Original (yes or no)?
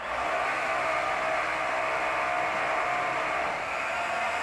yes